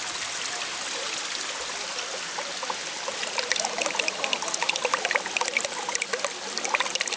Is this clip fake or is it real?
real